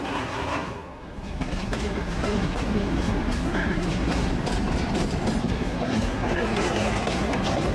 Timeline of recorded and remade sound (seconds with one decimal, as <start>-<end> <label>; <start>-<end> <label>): 0.0-4.3 remade; 4.3-5.4 recorded; 5.4-7.7 remade